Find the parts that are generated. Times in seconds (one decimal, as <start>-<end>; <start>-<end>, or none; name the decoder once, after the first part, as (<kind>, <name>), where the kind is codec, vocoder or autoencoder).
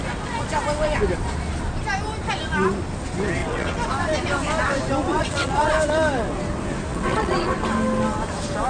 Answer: 3.4-3.9 (vocoder, WaveNeXt); 5.1-5.7; 6.9-7.5